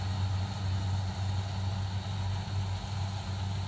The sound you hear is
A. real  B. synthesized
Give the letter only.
A